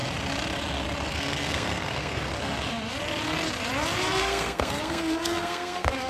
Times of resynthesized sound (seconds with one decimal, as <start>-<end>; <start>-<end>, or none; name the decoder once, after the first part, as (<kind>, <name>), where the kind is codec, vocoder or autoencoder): 1.1-2.3 (codec, SNAC); 4.1-6.1